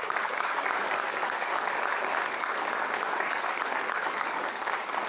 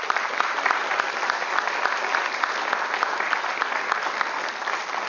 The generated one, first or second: first